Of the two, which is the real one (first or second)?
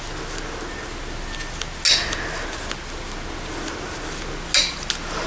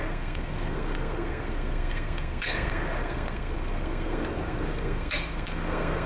first